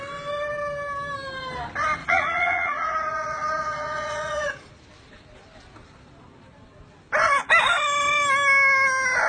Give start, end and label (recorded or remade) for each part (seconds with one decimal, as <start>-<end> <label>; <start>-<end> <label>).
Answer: 0.0-2.0 recorded; 2.0-4.7 remade; 4.7-9.3 recorded